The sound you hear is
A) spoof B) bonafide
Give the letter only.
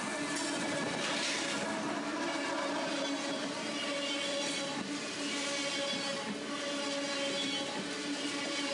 B